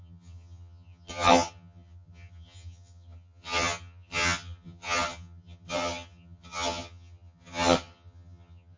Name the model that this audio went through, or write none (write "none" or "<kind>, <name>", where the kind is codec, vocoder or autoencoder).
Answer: vocoder, HiFi-GAN